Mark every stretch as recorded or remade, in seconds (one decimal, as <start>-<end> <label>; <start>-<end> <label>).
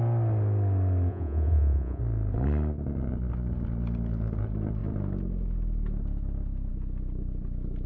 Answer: 0.0-1.1 recorded; 1.1-2.0 remade; 2.0-7.9 recorded